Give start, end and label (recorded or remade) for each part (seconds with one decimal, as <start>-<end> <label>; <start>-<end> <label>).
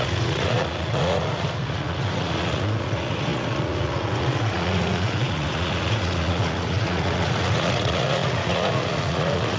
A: 0.0-9.6 remade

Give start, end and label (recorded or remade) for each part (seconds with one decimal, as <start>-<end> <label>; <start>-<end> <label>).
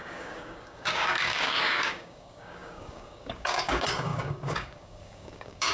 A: 0.0-5.7 remade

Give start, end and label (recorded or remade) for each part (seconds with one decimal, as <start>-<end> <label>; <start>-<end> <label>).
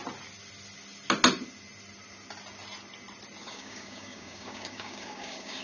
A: 0.0-3.4 recorded; 3.4-5.6 remade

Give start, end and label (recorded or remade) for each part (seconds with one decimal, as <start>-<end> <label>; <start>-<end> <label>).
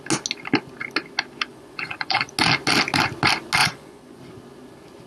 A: 0.0-1.5 recorded; 1.5-2.3 remade; 2.3-3.6 recorded; 3.6-4.2 remade; 4.2-5.1 recorded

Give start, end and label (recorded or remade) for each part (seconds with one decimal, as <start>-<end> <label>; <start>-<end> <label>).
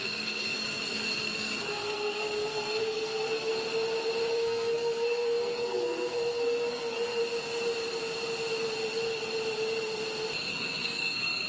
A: 0.0-3.5 remade; 3.5-4.3 recorded; 4.3-7.2 remade; 7.2-10.5 recorded; 10.5-11.5 remade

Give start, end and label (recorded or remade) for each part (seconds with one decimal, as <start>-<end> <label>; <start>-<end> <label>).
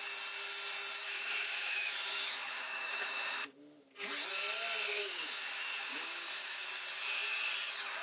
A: 0.0-1.0 recorded; 1.0-3.5 remade; 3.5-4.9 recorded; 4.9-6.6 remade; 6.6-8.0 recorded